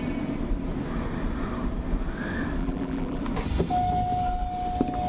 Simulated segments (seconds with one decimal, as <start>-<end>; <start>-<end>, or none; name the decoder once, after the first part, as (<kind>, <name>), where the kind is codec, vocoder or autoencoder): 2.6-3.2 (vocoder, BigVGAN v2)